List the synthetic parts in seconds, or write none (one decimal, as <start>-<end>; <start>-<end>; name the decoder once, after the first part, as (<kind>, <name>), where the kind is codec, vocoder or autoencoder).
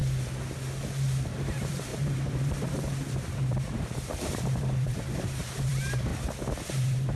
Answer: 1.3-6.1 (vocoder, BigVGAN v2); 6.6-7.2